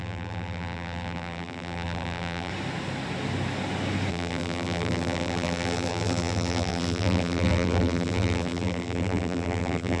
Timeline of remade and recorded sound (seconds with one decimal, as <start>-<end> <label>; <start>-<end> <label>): 0.0-2.5 remade; 2.5-4.1 recorded; 4.1-10.0 remade